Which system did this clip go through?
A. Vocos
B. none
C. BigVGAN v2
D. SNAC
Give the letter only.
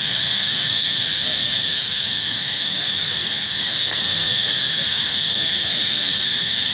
D